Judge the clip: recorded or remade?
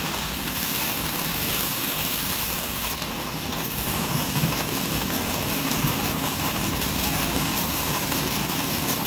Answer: remade